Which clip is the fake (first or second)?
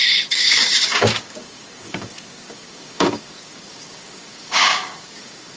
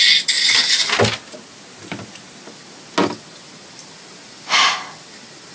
first